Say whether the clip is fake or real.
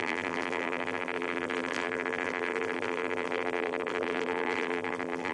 fake